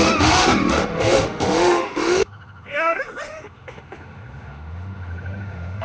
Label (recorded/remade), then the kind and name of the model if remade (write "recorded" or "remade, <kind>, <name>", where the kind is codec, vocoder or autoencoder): remade, autoencoder, DAC-VAE